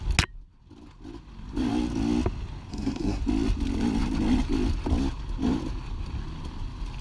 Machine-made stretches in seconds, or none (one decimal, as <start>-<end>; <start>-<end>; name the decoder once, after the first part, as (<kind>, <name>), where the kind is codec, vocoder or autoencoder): 2.7-3.2 (codec, SNAC)